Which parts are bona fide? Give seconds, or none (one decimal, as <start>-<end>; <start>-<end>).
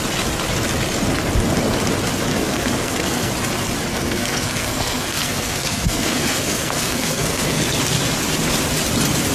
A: 0.0-2.3; 3.3-3.9; 7.8-9.3